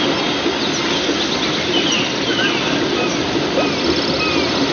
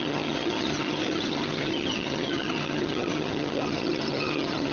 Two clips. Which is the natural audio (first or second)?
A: first